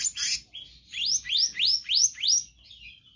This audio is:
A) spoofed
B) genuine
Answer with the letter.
B